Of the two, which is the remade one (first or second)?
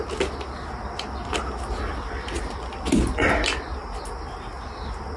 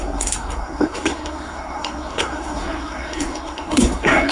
second